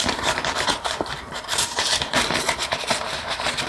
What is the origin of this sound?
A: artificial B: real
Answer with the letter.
A